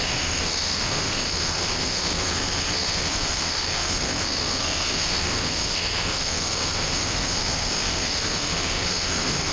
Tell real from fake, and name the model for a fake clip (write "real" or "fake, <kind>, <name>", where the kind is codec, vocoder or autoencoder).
fake, codec, SNAC